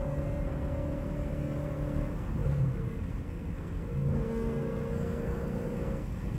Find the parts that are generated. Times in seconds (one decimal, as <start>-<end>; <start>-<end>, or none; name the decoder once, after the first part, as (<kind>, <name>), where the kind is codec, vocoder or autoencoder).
0.0-6.4 (codec, SNAC)